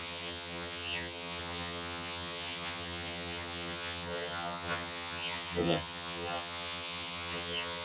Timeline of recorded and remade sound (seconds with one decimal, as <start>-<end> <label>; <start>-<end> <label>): 0.0-7.8 remade